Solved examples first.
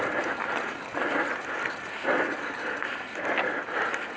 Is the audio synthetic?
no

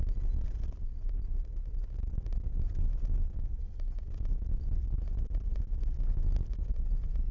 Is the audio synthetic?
no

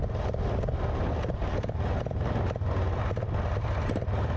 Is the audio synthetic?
no